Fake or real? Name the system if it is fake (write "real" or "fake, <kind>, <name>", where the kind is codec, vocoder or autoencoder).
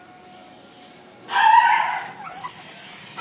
real